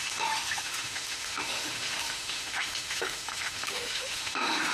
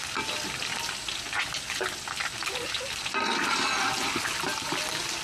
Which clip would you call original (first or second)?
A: second